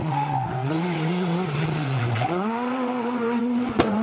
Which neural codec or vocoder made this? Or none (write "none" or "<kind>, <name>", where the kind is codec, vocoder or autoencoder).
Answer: vocoder, WaveNeXt